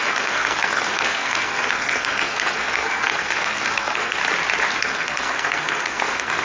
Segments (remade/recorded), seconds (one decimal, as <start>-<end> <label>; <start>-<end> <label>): 0.0-4.2 remade; 4.2-4.8 recorded; 4.8-6.4 remade